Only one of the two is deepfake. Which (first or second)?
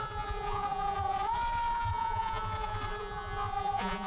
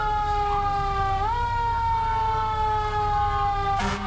first